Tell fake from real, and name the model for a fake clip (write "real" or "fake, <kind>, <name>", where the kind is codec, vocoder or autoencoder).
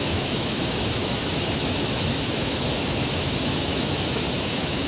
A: fake, autoencoder, DAC-VAE